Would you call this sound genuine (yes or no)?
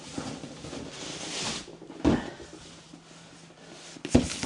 yes